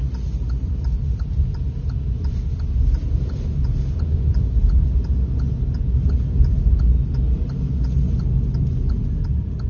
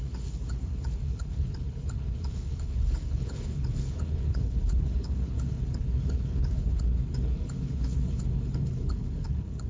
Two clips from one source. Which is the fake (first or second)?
second